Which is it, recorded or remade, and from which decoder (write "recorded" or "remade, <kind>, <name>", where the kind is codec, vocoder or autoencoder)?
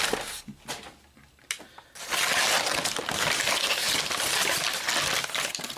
recorded